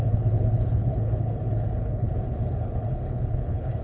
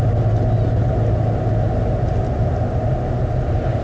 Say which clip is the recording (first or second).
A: second